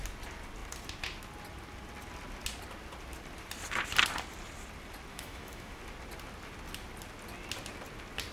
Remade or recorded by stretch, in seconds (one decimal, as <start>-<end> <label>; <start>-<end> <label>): 0.0-5.1 recorded; 5.1-5.8 remade; 5.8-8.3 recorded